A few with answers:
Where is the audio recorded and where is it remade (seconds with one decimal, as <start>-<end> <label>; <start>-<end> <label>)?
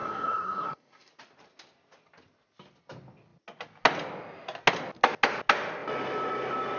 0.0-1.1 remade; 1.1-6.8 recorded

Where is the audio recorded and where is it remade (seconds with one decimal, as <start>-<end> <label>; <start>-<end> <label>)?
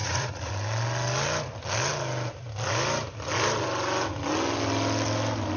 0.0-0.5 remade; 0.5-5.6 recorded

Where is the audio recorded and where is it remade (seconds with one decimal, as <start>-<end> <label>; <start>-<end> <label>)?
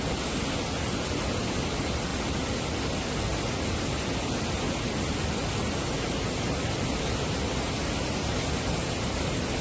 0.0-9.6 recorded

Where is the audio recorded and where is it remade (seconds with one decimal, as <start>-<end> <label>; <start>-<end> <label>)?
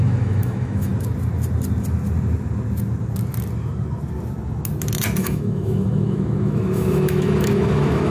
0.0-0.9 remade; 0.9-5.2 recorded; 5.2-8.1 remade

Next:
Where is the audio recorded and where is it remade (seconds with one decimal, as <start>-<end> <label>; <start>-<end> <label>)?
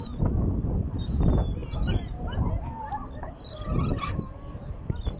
0.0-5.2 recorded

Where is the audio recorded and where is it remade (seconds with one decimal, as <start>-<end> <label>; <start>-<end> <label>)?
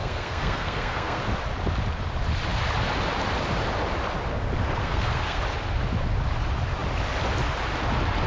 0.0-1.2 remade; 1.2-4.8 recorded; 4.8-5.4 remade; 5.4-8.3 recorded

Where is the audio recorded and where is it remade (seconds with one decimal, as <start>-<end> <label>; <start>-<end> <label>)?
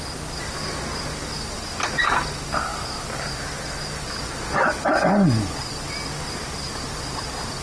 0.0-7.6 recorded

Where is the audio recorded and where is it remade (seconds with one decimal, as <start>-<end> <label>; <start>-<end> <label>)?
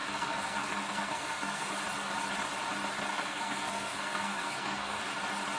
0.0-1.7 remade; 1.7-3.1 recorded; 3.1-5.0 remade; 5.0-5.6 recorded